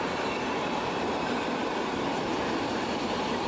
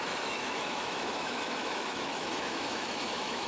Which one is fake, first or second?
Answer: second